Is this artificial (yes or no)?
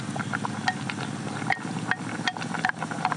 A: no